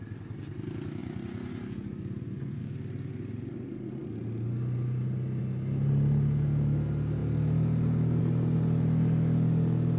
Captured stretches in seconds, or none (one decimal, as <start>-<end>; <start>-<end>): 0.0-1.0; 2.6-10.0